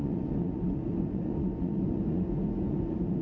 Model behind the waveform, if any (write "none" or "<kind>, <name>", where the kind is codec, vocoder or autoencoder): vocoder, Vocos